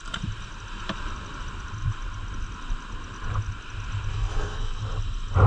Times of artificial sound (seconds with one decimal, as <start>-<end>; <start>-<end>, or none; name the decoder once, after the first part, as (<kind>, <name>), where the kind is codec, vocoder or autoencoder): 4.1-4.8 (codec, SNAC)